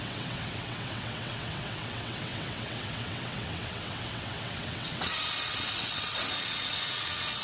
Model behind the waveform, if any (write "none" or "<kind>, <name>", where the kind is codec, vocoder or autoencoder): vocoder, WaveNeXt